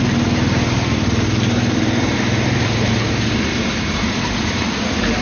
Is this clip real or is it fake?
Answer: real